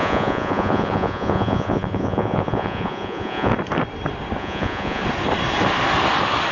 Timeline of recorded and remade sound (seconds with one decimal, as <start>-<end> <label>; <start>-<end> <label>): 0.0-3.5 remade; 3.5-4.4 recorded; 4.4-5.0 remade; 5.0-6.5 recorded